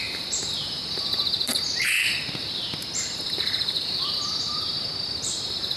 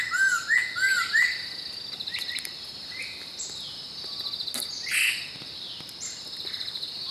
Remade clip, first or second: first